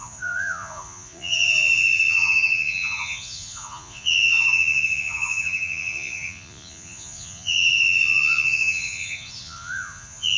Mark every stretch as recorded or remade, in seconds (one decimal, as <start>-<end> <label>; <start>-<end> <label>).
0.0-10.4 remade